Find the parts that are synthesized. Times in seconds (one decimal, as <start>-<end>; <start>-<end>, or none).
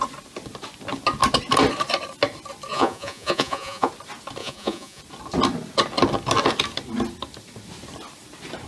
2.7-3.9; 4.4-5.0